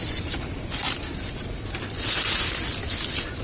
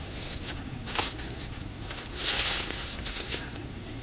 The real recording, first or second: first